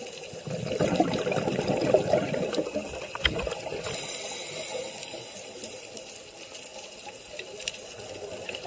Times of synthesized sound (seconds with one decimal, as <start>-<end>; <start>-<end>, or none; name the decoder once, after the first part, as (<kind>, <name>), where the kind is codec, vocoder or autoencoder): none